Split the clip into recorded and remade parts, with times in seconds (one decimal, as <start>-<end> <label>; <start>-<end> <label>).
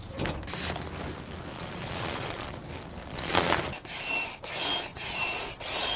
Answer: 0.0-1.5 recorded; 1.5-2.5 remade; 2.5-3.0 recorded; 3.0-3.6 remade; 3.6-4.9 recorded; 4.9-6.0 remade